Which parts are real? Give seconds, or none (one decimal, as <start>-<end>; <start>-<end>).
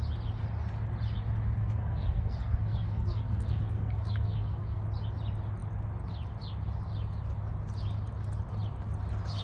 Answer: 0.0-1.6; 4.8-9.4